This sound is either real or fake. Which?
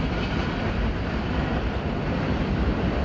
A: real